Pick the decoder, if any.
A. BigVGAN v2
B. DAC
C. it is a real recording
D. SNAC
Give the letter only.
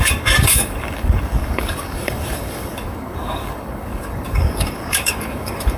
B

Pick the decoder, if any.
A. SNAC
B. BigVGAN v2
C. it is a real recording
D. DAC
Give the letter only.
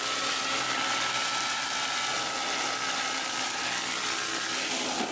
C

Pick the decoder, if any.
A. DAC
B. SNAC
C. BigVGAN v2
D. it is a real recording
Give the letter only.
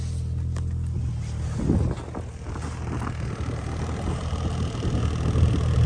D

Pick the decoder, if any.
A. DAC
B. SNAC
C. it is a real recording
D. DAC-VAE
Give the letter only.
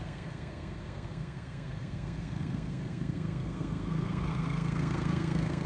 B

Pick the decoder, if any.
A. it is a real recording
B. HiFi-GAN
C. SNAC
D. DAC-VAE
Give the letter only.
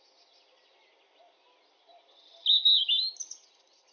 A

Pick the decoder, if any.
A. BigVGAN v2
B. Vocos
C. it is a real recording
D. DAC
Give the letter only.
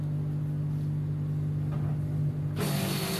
C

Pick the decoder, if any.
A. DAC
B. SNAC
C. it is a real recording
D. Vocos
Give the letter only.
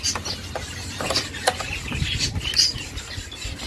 C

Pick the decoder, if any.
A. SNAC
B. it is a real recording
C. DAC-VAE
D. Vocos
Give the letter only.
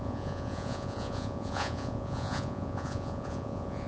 D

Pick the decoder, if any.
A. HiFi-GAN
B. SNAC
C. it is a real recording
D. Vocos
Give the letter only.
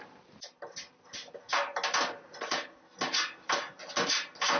C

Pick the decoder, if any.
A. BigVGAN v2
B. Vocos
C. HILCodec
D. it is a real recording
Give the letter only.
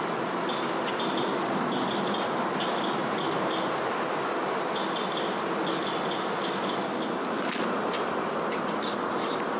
D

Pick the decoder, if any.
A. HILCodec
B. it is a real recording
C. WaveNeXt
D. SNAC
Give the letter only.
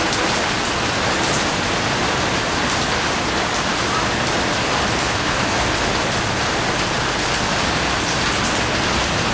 B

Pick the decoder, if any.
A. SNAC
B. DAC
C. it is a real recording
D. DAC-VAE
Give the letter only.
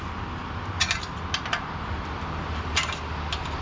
C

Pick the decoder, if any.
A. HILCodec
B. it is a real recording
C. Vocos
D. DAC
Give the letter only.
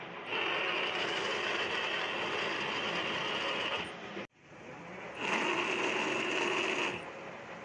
B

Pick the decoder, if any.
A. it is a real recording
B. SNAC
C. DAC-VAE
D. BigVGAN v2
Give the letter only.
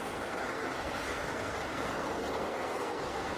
B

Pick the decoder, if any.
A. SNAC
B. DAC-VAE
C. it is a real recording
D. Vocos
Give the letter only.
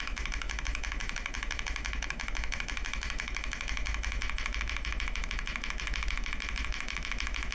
B